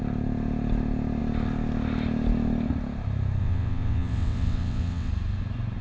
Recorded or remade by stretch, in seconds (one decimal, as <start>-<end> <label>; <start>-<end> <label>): 0.0-3.4 recorded; 3.4-5.1 remade; 5.1-5.8 recorded